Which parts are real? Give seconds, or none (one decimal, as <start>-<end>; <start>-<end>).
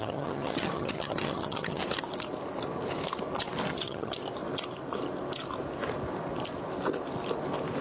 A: 1.8-3.7; 4.2-7.8